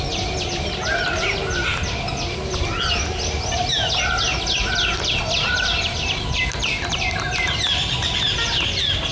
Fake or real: real